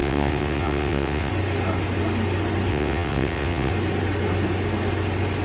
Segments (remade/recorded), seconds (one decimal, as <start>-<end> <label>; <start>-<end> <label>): 0.0-1.3 remade; 1.3-2.7 recorded; 2.7-3.7 remade; 3.7-5.4 recorded